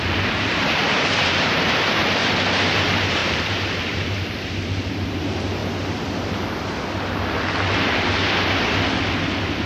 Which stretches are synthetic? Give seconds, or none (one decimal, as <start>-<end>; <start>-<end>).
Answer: 0.0-5.6